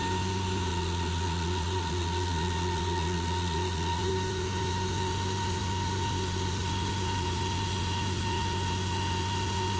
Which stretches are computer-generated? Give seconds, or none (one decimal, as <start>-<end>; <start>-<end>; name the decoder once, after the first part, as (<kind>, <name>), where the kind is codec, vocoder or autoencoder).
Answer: 0.7-4.0 (vocoder, Vocos)